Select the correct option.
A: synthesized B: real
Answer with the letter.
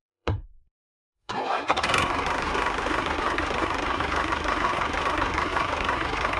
A